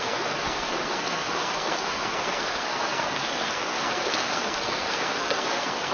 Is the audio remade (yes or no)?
yes